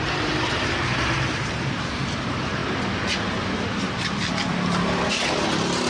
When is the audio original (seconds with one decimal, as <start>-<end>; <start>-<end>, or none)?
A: 2.6-5.1